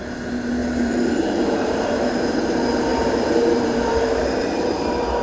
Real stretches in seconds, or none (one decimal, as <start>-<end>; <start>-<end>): 0.0-0.6; 2.0-2.9; 4.7-5.2